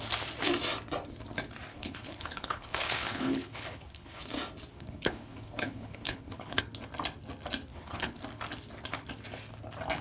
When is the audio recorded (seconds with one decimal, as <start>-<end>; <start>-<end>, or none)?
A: 0.0-1.7; 4.2-4.7; 6.6-7.7; 8.2-10.0